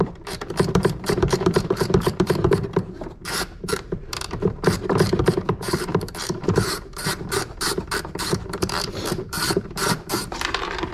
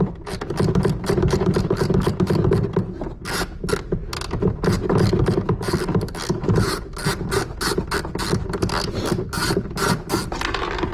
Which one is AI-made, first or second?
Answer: first